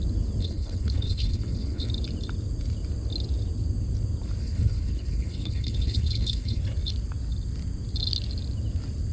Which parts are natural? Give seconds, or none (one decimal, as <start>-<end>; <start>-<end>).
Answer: 0.0-0.4; 1.9-4.4; 6.6-9.1